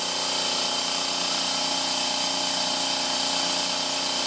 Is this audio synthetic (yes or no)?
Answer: no